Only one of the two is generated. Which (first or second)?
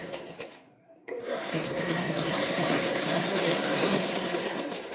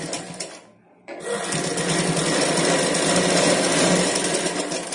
first